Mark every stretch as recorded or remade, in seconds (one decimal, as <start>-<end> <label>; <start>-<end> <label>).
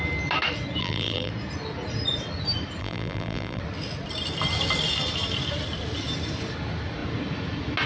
0.0-0.8 recorded; 0.8-1.3 remade; 1.3-2.8 recorded; 2.8-3.6 remade; 3.6-7.9 recorded